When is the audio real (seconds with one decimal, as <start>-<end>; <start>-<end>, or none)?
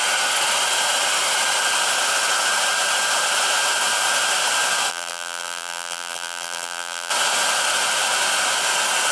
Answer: 0.0-4.9; 7.1-9.1